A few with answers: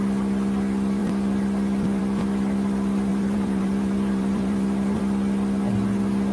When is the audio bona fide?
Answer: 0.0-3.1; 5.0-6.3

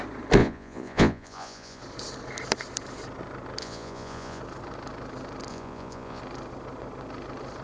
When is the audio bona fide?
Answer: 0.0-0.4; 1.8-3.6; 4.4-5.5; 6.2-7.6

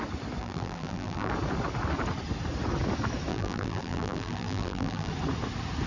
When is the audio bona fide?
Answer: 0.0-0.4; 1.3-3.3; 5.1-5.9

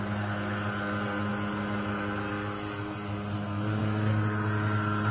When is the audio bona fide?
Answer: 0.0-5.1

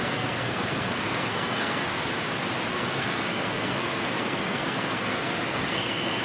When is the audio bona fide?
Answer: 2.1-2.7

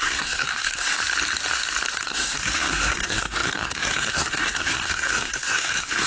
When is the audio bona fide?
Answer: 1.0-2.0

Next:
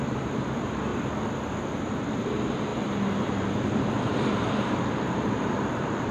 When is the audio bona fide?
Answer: 0.9-2.1

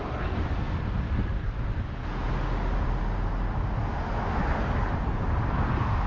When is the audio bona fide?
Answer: 0.0-6.1